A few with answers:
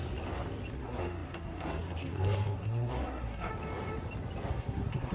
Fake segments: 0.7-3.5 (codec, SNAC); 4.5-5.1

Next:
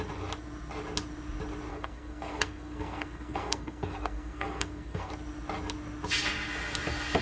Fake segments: 1.7-5.1 (codec, SNAC)

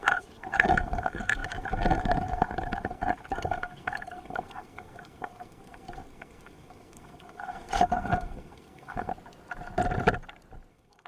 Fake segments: 0.0-9.1 (codec, SNAC); 10.7-11.1

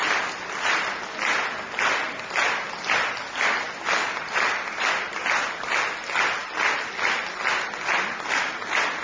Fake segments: none

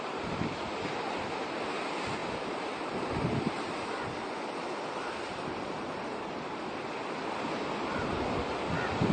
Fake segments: none